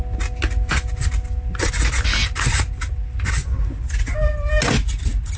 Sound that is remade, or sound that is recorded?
recorded